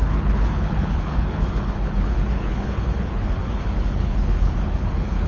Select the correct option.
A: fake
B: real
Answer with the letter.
A